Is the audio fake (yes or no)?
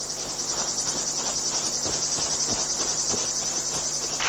no